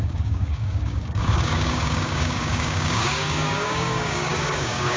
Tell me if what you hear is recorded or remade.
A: remade